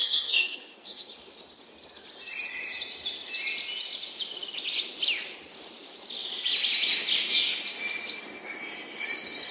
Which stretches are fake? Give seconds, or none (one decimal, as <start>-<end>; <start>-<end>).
0.0-1.1